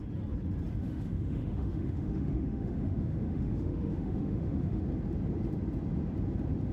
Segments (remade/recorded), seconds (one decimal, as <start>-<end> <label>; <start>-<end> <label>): 0.0-0.8 recorded; 0.8-4.8 remade; 4.8-6.7 recorded